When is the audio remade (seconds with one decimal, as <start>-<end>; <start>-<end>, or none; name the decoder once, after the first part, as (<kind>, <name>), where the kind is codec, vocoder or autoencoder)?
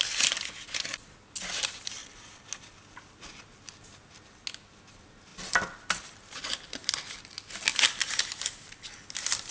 none